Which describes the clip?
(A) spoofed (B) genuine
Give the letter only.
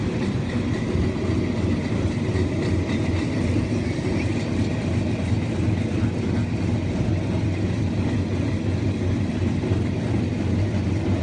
B